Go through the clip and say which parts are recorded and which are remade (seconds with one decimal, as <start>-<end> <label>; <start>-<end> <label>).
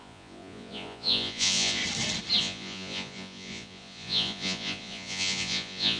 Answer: 0.0-1.8 remade; 1.8-2.4 recorded; 2.4-6.0 remade